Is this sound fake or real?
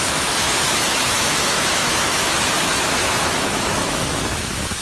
fake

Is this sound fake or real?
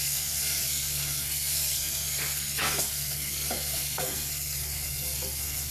fake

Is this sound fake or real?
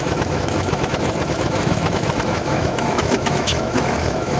fake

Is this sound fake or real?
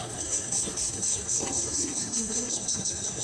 fake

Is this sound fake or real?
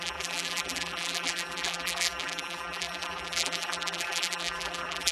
fake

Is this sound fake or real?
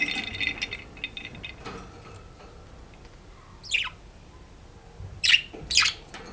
real